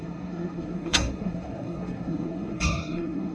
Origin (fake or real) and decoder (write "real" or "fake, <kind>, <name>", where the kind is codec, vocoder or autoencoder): fake, codec, SNAC